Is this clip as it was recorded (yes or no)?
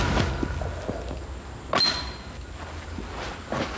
yes